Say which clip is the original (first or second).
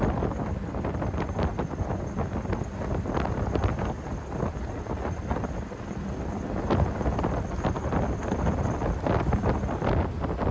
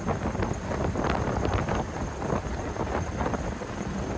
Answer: first